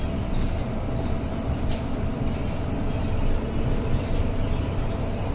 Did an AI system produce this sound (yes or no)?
no